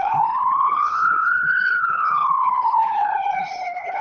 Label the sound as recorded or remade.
remade